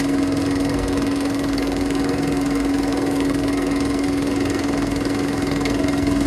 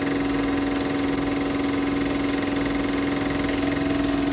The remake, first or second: first